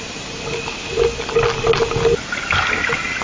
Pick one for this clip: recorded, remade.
recorded